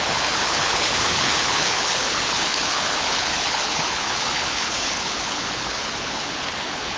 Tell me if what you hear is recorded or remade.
remade